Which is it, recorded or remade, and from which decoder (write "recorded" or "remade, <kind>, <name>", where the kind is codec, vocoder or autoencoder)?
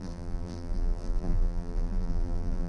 remade, vocoder, BigVGAN v2